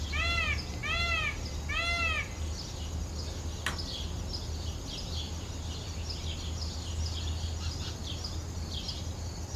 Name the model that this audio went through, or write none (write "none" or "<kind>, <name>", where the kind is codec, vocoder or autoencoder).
none